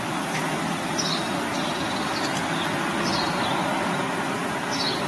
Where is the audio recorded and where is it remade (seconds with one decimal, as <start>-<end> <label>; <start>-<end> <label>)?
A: 0.0-5.1 recorded